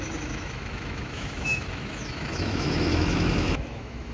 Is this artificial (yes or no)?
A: yes